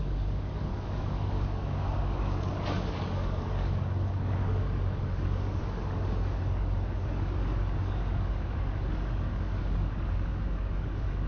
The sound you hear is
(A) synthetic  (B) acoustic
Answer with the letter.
A